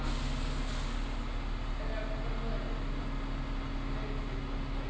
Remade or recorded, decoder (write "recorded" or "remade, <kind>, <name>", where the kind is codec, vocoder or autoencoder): recorded